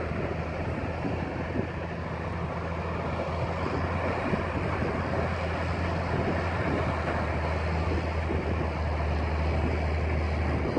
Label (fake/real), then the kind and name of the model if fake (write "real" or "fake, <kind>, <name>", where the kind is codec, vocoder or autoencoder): real